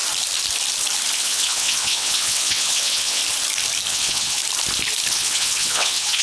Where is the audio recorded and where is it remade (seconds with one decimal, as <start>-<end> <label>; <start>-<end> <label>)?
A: 0.0-1.2 recorded; 1.2-3.2 remade; 3.2-3.9 recorded; 3.9-4.4 remade; 4.4-5.1 recorded; 5.1-6.2 remade

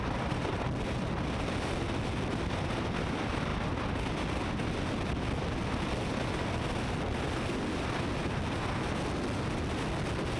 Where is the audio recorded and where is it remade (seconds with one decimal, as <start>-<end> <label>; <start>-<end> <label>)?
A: 0.0-10.4 recorded